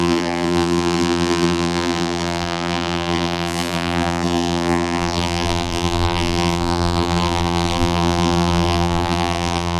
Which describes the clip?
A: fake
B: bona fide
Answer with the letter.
A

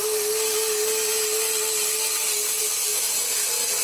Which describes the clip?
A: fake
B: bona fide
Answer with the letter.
B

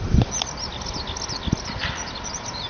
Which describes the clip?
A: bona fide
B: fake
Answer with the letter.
A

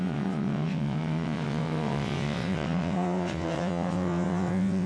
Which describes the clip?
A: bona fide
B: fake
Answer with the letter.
B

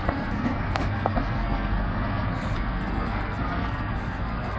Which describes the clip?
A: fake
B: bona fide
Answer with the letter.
A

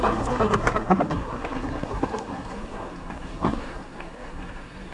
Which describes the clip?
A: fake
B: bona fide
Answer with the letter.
A